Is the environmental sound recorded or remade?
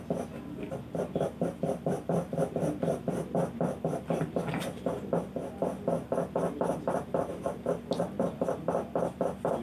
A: recorded